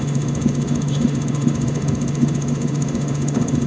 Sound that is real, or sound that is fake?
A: fake